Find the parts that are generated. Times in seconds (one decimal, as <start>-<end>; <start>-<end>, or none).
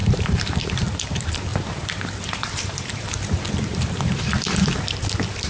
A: 0.0-0.6; 1.5-3.3; 3.7-4.2